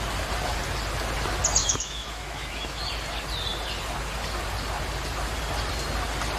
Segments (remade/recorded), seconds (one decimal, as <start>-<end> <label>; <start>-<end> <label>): 0.0-1.6 recorded; 1.6-2.8 remade; 2.8-6.4 recorded